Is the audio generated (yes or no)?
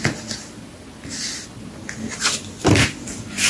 no